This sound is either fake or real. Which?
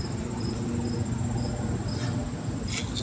real